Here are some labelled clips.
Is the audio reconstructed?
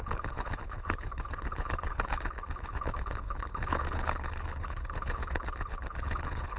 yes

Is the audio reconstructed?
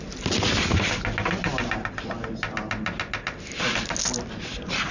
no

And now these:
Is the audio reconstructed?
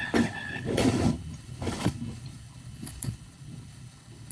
yes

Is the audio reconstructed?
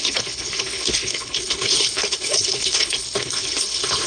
yes